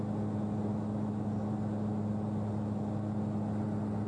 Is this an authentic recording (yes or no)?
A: yes